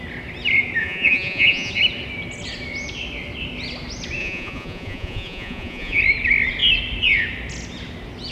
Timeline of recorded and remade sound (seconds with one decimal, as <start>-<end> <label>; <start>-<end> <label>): 0.0-0.8 recorded; 0.8-1.7 remade; 1.7-4.2 recorded; 4.2-6.0 remade; 6.0-8.3 recorded